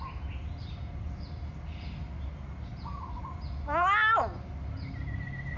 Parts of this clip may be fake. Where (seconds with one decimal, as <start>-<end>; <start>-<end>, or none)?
none